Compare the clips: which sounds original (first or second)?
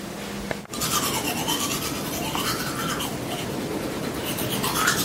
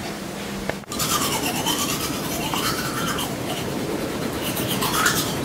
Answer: first